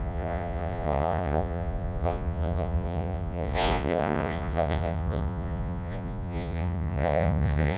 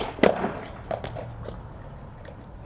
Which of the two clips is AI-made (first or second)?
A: first